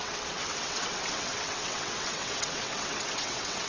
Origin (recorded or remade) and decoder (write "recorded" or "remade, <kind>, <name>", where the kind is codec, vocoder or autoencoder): remade, vocoder, WaveNeXt